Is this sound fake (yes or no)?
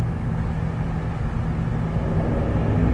no